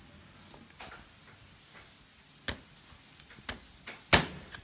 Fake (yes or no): no